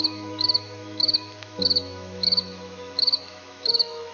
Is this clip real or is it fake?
fake